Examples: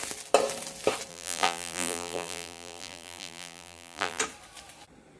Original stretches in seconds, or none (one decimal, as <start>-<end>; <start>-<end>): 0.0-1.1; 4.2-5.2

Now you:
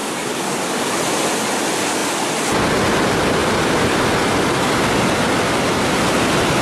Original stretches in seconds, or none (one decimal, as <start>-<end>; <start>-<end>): 0.9-6.6

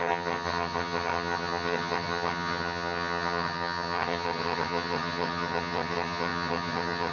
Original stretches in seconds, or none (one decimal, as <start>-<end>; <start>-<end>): none

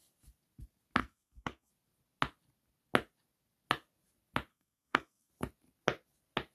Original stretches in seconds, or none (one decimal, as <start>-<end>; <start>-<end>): 0.0-1.0; 1.7-4.5; 5.3-6.5

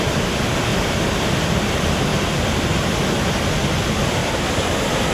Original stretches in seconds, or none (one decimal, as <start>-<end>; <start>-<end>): 0.0-2.1; 2.9-5.1

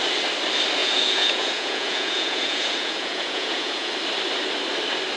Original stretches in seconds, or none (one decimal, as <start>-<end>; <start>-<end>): 0.0-0.8; 3.9-5.2

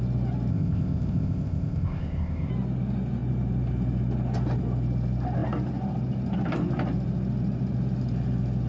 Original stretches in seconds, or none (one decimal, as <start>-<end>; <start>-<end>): 0.0-0.5; 2.5-8.7

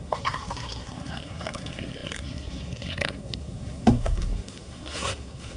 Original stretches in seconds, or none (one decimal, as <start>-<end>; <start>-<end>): none